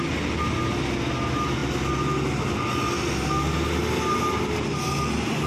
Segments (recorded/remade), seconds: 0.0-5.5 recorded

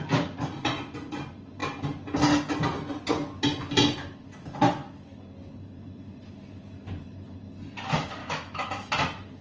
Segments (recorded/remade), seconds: 0.0-8.2 recorded; 8.2-8.9 remade; 8.9-9.4 recorded